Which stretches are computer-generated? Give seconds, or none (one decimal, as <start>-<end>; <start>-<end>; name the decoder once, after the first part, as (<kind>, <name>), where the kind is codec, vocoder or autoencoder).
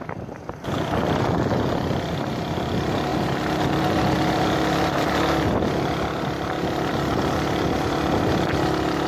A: none